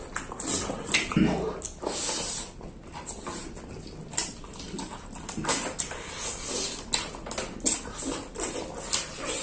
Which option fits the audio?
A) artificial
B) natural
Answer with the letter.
B